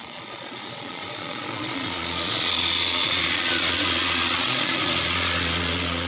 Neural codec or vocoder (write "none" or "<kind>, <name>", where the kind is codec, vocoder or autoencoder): vocoder, Vocos